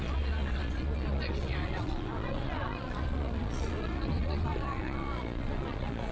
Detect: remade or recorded remade